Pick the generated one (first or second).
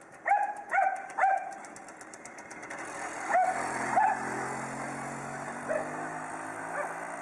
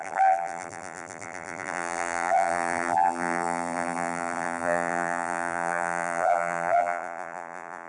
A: second